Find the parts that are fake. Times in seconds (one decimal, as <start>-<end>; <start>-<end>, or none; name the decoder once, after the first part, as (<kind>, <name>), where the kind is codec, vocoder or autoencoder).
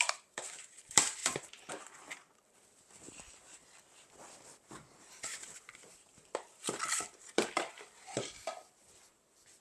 0.0-1.2 (vocoder, BigVGAN v2); 3.3-6.6; 7.9-9.6